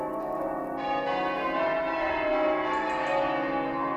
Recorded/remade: recorded